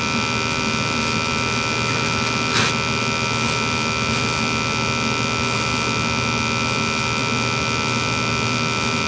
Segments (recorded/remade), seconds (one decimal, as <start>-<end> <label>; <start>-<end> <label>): 0.0-9.1 recorded